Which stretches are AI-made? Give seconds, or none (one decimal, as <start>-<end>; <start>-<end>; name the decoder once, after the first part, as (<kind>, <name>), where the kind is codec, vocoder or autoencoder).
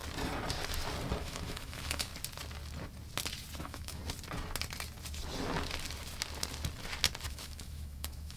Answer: 1.2-2.1 (autoencoder, DAC-VAE); 3.6-4.0; 7.3-8.4